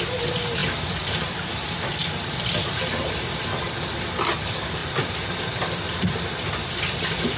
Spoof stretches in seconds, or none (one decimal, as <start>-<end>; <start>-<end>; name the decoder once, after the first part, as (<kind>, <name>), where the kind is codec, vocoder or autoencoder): none